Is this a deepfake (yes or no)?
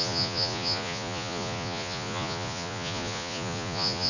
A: yes